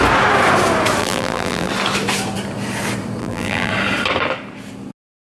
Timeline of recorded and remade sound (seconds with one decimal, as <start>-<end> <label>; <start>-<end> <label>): 0.0-1.0 recorded; 1.0-1.7 remade; 1.7-3.2 recorded; 3.2-3.7 remade; 3.7-5.3 recorded

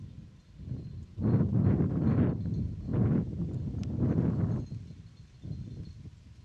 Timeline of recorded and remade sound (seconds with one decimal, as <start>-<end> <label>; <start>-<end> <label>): 0.0-6.4 recorded

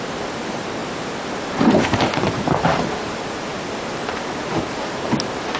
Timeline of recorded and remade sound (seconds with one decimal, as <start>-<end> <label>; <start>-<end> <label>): 0.0-0.8 remade; 0.8-1.3 recorded; 1.3-5.6 remade

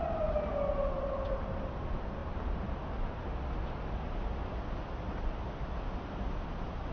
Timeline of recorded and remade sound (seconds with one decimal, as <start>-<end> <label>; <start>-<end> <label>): 0.0-6.9 recorded